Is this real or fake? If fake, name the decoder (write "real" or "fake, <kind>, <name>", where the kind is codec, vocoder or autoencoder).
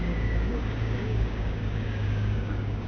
fake, codec, DAC